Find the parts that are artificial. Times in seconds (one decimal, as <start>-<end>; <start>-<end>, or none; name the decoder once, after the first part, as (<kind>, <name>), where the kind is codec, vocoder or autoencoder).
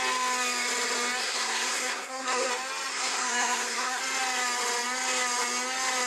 1.2-2.5 (codec, SNAC); 2.9-4.0